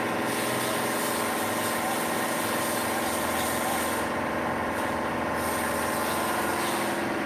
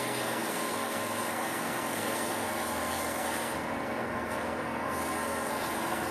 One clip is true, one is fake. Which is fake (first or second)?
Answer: second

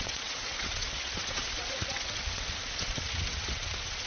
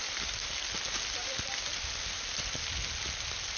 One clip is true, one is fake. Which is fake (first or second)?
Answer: first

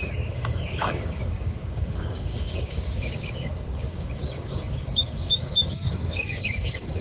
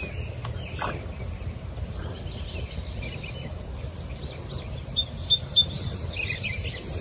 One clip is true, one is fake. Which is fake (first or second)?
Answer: first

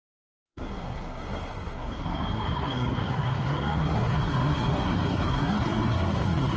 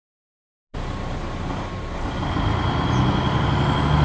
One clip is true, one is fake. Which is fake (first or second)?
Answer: first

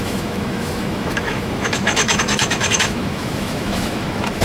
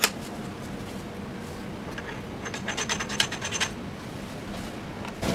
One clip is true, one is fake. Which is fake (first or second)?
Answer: first